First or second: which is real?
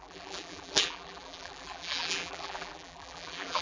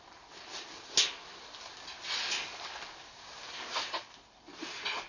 second